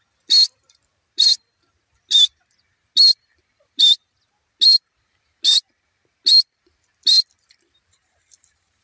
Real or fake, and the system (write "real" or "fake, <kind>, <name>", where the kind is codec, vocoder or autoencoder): real